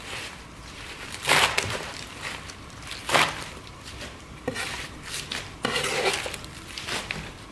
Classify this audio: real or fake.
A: fake